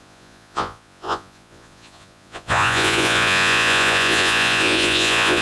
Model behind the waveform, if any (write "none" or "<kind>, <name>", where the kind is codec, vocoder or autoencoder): vocoder, Vocos